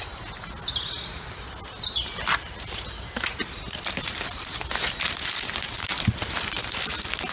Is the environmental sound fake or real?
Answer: real